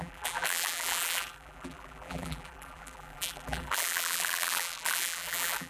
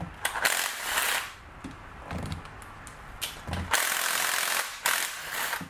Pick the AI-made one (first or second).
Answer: first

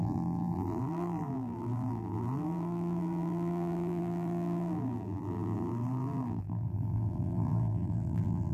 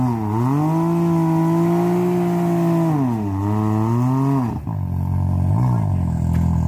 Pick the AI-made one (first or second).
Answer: first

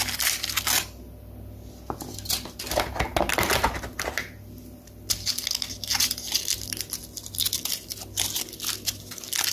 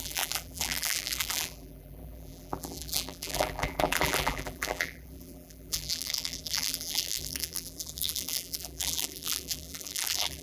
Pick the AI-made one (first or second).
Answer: second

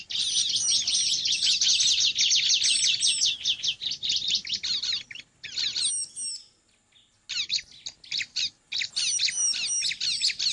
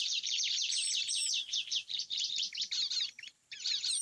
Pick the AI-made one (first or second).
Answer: second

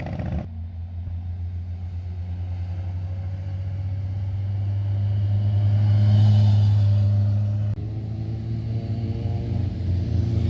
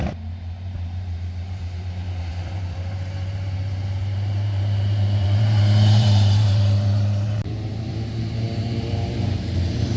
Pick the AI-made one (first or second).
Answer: second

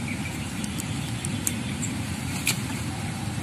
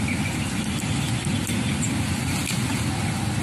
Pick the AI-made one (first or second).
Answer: first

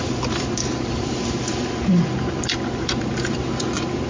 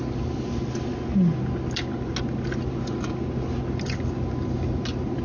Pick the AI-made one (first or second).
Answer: first